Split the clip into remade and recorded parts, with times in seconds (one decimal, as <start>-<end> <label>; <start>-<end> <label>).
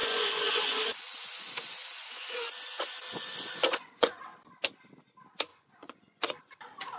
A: 0.0-4.2 remade; 4.2-5.5 recorded; 5.5-6.4 remade; 6.4-7.0 recorded